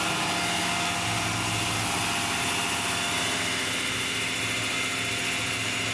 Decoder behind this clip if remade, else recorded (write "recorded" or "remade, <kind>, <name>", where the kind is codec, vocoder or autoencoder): recorded